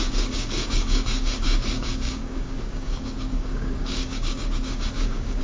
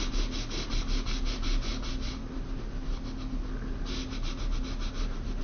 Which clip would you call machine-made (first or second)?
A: first